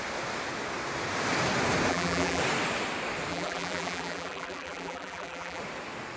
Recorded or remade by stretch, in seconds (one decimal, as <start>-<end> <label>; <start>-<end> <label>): 0.0-1.9 recorded; 1.9-2.4 remade; 2.4-3.3 recorded; 3.3-5.6 remade; 5.6-6.2 recorded

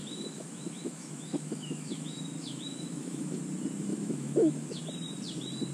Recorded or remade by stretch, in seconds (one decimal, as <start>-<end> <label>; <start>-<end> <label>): 0.0-3.4 remade; 3.4-3.9 recorded; 3.9-4.8 remade; 4.8-5.7 recorded

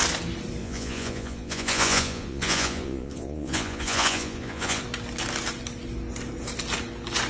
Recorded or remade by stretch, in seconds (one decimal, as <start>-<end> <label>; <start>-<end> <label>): 0.0-0.6 recorded; 0.6-4.8 remade; 4.8-7.3 recorded

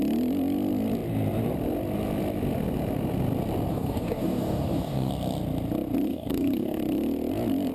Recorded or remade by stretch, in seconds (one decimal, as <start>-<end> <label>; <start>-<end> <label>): 0.0-3.7 recorded; 3.7-5.1 remade; 5.1-6.1 recorded; 6.1-6.8 remade; 6.8-7.7 recorded

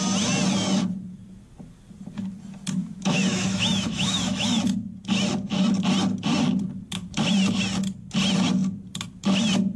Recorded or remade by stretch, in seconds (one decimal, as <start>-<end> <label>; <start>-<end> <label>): 0.0-2.8 recorded; 2.8-4.6 remade; 4.6-9.8 recorded

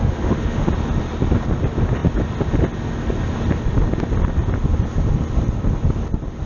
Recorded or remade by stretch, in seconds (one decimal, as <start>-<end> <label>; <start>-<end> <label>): 0.0-0.7 remade; 0.7-6.5 recorded

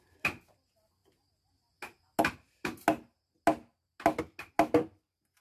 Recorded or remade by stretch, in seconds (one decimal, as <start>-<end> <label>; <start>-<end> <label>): 0.0-5.4 recorded

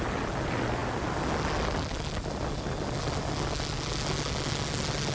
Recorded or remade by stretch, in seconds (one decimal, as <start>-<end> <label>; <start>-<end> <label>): 0.0-5.1 recorded